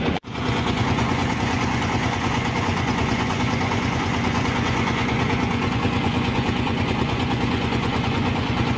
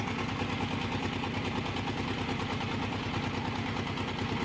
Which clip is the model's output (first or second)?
first